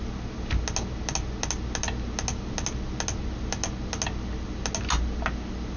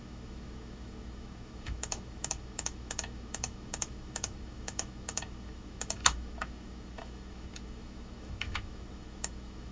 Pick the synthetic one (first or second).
second